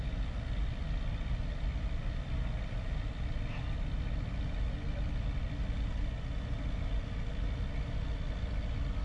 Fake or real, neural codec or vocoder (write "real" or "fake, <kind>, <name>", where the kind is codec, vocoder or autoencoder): real